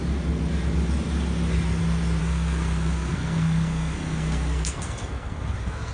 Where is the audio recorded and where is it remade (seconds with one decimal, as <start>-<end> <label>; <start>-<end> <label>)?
0.0-2.2 recorded; 2.2-5.9 remade